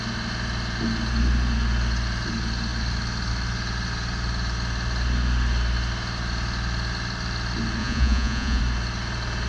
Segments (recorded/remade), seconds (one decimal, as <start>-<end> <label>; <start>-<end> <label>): 0.0-7.8 recorded; 7.8-8.6 remade; 8.6-9.5 recorded